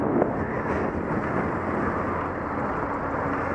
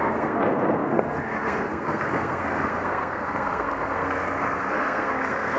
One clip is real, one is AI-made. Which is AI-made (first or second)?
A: second